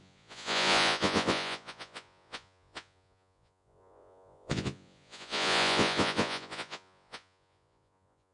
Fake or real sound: fake